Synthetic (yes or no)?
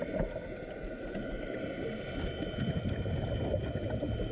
no